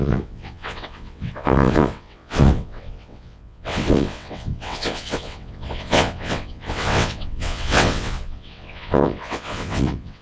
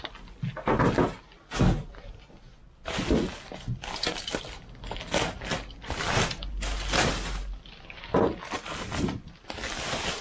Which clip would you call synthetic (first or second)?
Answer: first